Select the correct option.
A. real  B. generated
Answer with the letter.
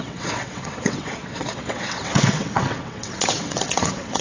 B